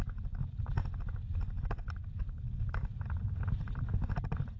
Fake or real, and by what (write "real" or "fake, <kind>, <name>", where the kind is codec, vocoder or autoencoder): real